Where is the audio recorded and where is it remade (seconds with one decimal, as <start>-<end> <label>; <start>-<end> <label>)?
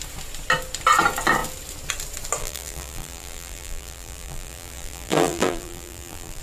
0.0-2.4 recorded; 2.4-6.4 remade